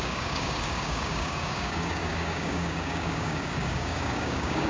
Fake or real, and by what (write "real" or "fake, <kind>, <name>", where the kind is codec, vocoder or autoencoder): fake, codec, DAC